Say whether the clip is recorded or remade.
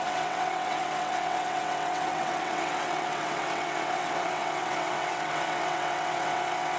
remade